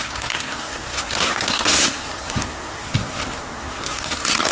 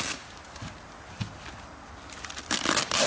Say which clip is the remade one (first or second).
first